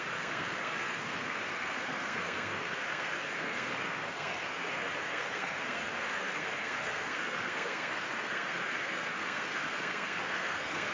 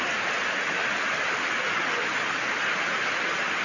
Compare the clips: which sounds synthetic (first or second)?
first